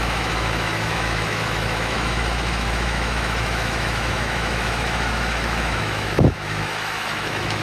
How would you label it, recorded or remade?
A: remade